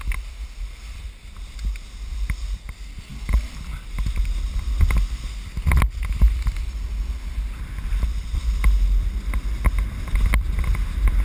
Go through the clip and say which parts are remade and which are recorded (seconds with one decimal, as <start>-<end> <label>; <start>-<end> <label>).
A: 0.0-11.2 recorded